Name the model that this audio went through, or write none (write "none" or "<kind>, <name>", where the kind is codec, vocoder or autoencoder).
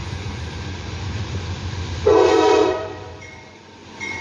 vocoder, Vocos